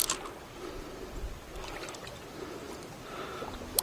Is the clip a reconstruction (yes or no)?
no